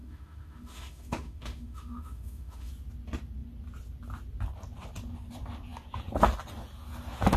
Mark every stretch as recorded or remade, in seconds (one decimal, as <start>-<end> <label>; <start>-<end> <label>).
0.0-2.7 remade; 2.7-7.4 recorded